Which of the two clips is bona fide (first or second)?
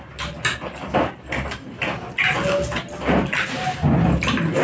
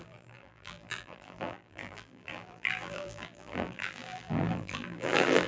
first